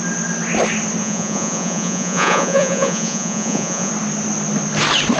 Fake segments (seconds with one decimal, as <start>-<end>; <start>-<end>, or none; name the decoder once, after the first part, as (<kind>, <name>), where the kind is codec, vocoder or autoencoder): 1.0-3.9 (vocoder, Vocos)